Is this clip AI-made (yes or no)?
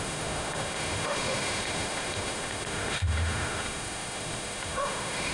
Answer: yes